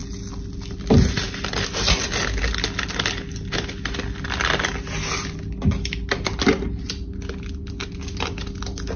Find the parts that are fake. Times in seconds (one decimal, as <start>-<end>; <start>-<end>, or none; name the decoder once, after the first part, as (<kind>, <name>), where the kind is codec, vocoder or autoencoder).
none